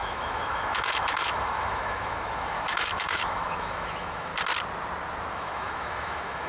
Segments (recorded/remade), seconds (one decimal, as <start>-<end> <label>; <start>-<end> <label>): 0.0-4.3 remade; 4.3-5.3 recorded; 5.3-6.5 remade